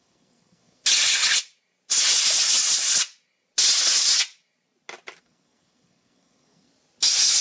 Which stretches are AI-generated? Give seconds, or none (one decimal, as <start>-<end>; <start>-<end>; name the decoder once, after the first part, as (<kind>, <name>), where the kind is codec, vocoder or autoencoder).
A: 0.0-0.8 (codec, SNAC); 5.2-6.7